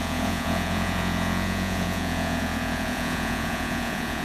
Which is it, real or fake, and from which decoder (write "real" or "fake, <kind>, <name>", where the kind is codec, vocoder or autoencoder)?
fake, vocoder, Vocos